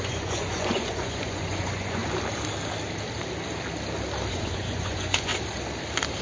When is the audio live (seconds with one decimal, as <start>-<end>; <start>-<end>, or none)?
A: 2.0-4.3; 5.3-6.2